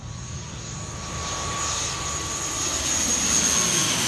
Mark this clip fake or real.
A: real